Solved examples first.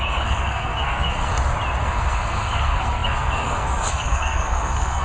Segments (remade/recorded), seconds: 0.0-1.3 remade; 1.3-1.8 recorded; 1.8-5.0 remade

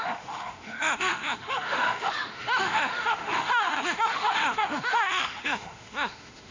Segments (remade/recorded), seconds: 0.0-6.5 remade